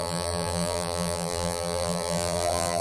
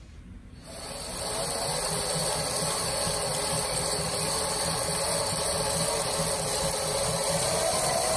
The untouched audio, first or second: second